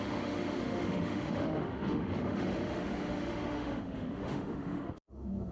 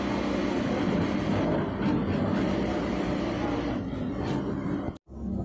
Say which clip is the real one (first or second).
second